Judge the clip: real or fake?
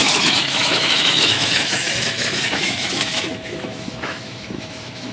fake